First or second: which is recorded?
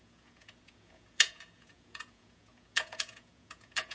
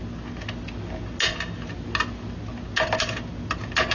second